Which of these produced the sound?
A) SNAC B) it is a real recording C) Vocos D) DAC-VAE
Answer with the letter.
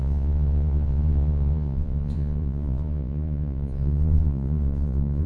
C